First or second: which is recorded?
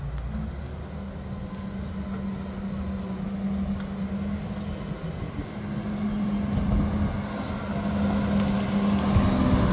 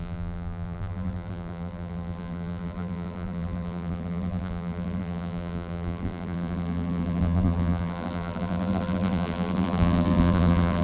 first